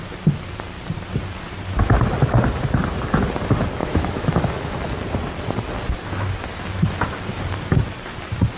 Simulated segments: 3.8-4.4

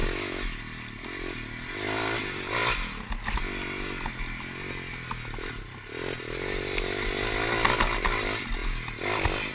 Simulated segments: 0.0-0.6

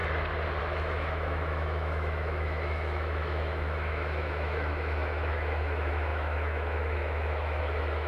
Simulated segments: 0.6-8.1

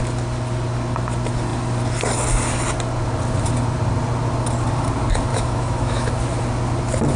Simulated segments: 5.3-6.1

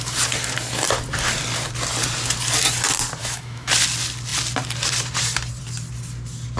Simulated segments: 3.2-3.7

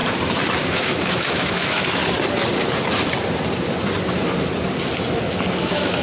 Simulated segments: 0.8-2.0; 5.6-6.0

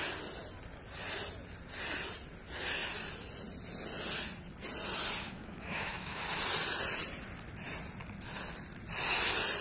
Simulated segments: 5.2-6.2